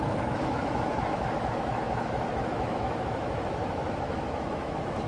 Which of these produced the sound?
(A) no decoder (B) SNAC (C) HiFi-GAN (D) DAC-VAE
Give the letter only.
D